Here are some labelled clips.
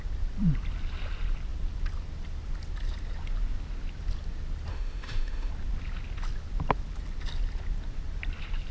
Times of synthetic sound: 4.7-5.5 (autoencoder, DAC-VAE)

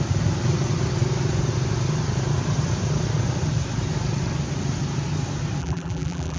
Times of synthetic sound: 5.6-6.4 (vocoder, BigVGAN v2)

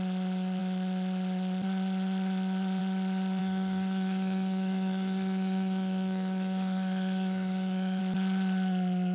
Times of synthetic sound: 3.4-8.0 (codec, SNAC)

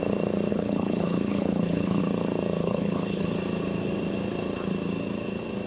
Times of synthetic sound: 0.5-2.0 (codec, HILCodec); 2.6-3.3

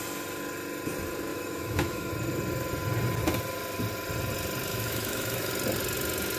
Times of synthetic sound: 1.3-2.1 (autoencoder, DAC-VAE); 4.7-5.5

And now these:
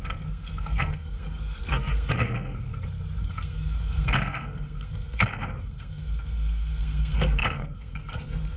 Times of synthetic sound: 0.0-2.7 (codec, SNAC); 3.2-8.6

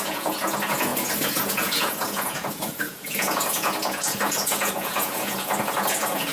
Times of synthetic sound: 0.0-6.3 (vocoder, Vocos)

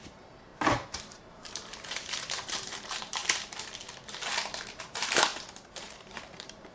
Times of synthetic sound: 0.0-3.2 (vocoder, BigVGAN v2); 4.6-6.7